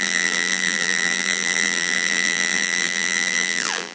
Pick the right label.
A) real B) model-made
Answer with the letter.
B